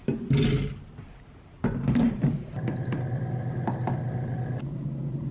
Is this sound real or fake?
real